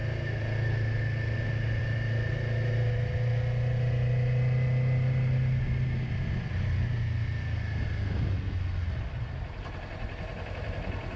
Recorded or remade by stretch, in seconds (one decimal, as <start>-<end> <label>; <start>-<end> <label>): 0.0-11.2 recorded